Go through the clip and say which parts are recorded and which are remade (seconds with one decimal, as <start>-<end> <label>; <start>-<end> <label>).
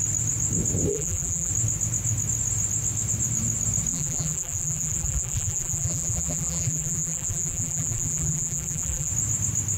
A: 0.0-0.9 recorded; 0.9-1.5 remade; 1.5-3.9 recorded; 3.9-9.1 remade; 9.1-9.8 recorded